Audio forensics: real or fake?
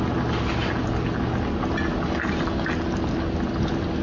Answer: real